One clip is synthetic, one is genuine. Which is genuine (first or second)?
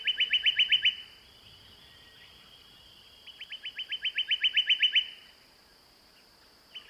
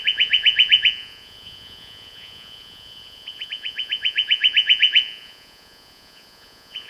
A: first